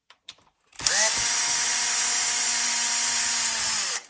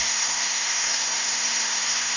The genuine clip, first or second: first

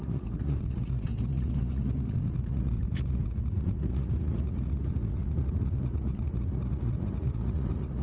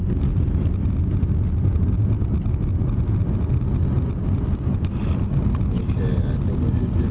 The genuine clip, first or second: second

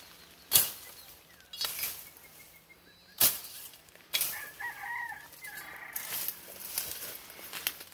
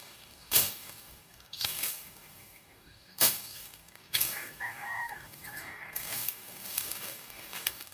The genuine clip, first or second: first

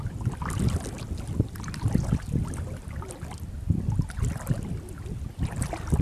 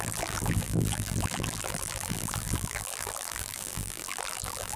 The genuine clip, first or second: first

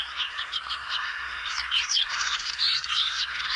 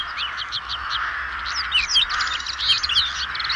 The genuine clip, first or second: second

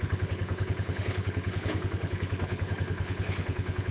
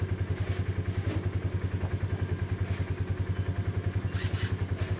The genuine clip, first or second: second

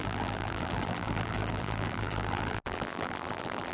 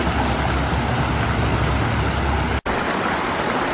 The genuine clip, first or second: second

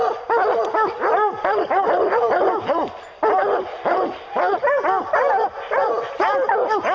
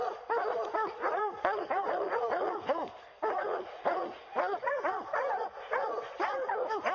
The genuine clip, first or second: first